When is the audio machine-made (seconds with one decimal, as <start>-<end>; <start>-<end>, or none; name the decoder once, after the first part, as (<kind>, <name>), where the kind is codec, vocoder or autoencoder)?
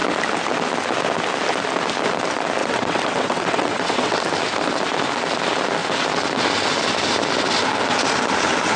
2.6-4.2 (vocoder, WaveNeXt)